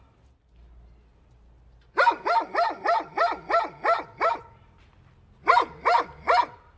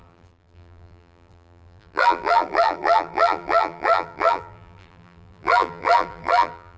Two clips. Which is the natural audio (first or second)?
first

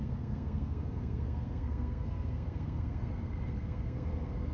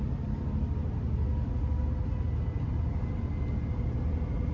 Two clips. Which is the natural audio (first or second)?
second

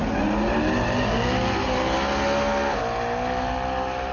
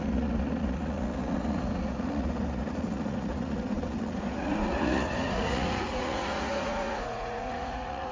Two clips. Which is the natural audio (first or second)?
first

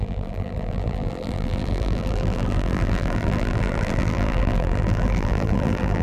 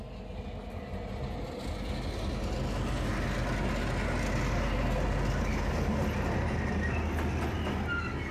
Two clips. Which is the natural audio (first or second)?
second